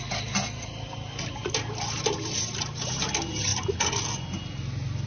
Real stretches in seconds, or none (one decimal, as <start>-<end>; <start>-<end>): 0.0-5.1